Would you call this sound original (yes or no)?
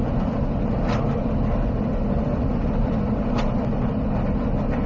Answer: yes